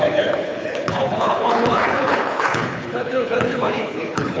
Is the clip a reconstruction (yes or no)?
yes